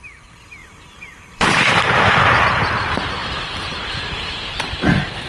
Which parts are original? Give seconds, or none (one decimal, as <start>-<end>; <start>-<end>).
0.0-0.6; 2.4-3.2

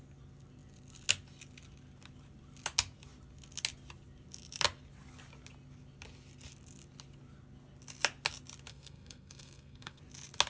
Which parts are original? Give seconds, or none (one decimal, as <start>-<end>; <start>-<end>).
0.0-8.7; 10.0-10.5

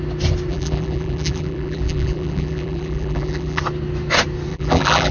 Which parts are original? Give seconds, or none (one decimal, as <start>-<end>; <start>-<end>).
0.0-0.5; 3.6-4.5

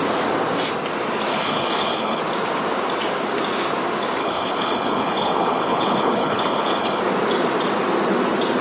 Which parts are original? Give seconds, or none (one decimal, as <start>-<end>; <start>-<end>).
0.0-1.3; 2.2-4.2; 7.0-8.6

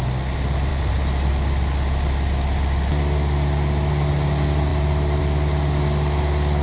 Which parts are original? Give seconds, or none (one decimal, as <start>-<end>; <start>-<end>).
0.0-0.7; 1.3-4.7; 5.2-6.6

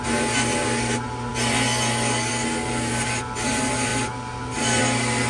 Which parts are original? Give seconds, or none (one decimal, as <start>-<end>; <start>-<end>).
0.0-5.3

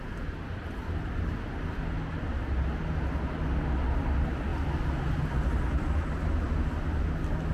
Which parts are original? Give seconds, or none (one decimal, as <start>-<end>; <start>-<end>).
0.0-7.5

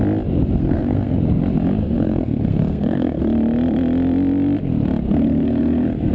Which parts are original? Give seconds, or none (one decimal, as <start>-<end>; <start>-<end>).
0.0-0.6; 1.2-1.8; 3.2-5.1